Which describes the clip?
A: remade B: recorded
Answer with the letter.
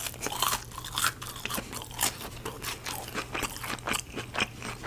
B